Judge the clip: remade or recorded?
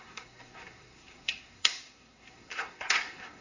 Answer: remade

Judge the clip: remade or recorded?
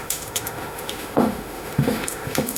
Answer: remade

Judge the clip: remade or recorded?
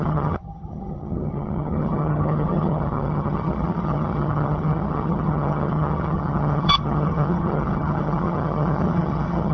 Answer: remade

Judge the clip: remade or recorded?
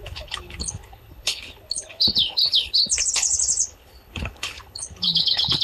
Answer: remade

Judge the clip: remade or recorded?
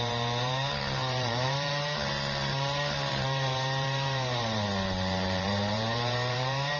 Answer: remade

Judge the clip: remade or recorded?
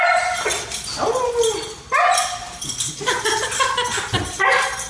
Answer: recorded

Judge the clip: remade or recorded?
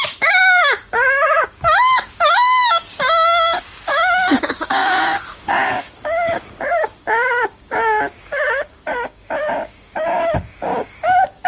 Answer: remade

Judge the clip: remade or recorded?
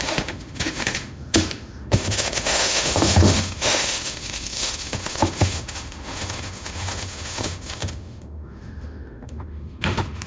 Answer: remade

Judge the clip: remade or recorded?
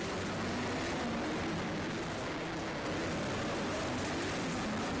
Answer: recorded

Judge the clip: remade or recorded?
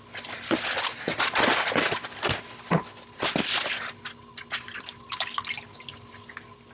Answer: recorded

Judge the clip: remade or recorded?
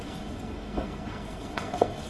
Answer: remade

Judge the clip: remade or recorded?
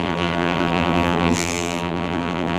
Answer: remade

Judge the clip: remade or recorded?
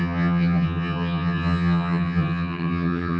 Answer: remade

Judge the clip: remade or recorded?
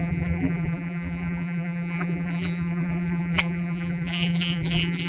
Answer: remade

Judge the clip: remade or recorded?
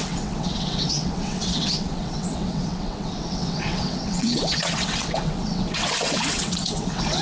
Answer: remade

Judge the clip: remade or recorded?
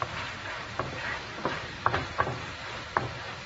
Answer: recorded